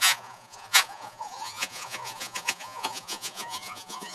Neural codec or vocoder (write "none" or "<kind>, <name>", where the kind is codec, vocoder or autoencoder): vocoder, Vocos